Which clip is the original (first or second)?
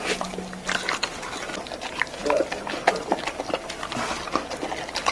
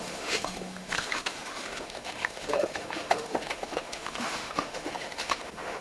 first